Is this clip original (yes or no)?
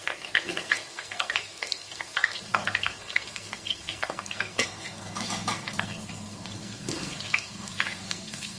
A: no